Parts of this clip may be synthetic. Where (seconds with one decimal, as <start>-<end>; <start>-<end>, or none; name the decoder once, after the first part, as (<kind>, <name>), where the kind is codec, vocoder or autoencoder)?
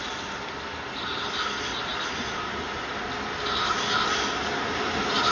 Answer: none